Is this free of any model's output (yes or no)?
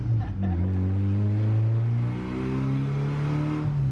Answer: yes